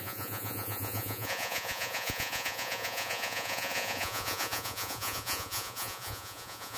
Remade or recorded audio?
remade